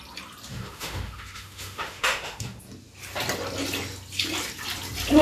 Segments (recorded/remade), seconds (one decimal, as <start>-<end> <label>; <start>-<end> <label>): 0.0-0.5 recorded; 0.5-2.6 remade; 2.6-5.2 recorded